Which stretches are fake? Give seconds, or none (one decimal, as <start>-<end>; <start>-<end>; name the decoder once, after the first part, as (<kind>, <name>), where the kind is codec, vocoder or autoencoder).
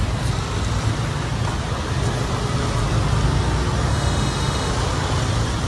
3.9-4.7 (autoencoder, DAC-VAE)